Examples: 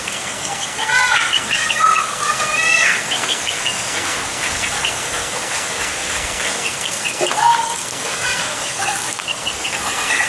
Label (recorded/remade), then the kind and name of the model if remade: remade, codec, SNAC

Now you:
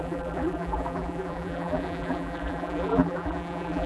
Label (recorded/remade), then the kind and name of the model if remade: remade, vocoder, BigVGAN v2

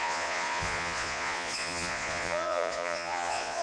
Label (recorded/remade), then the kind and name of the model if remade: remade, vocoder, Vocos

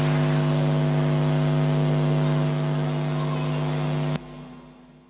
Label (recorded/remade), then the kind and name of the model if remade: recorded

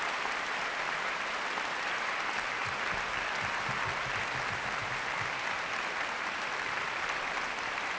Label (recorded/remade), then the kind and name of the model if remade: recorded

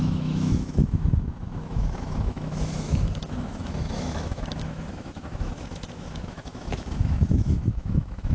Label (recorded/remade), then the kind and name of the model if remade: remade, autoencoder, DAC-VAE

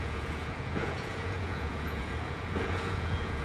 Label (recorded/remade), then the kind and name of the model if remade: remade, vocoder, Vocos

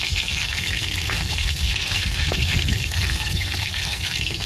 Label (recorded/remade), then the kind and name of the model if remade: remade, codec, SNAC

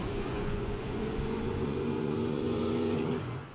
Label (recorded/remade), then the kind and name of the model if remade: remade, vocoder, Vocos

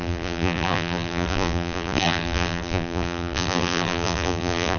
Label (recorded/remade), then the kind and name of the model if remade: remade, vocoder, BigVGAN v2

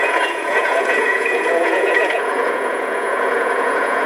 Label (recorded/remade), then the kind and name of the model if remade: remade, vocoder, Vocos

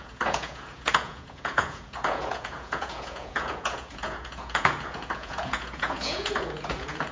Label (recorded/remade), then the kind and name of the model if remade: remade, vocoder, Vocos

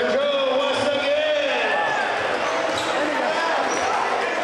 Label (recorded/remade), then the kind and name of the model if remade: recorded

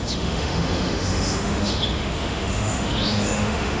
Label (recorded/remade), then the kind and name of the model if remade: remade, autoencoder, DAC-VAE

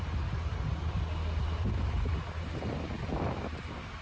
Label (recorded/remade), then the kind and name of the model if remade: recorded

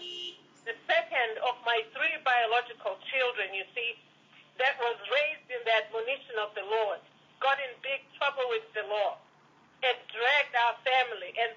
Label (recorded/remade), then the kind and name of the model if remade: recorded